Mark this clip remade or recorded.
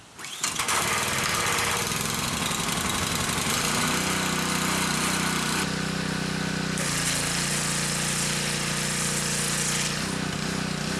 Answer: recorded